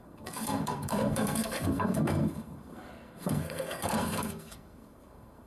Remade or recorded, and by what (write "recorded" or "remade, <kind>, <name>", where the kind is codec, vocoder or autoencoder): remade, codec, SNAC